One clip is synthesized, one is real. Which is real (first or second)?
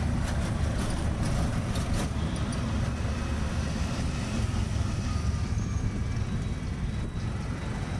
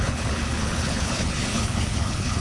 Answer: first